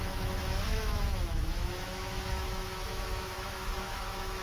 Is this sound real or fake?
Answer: fake